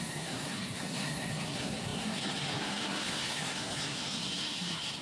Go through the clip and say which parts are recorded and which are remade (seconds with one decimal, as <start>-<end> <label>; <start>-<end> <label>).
0.0-5.0 remade